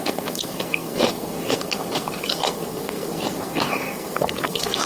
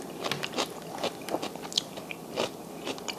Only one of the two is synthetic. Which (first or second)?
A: first